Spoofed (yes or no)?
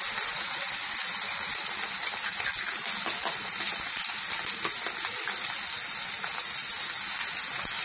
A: no